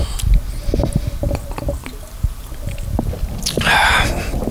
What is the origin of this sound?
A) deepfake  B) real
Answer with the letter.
B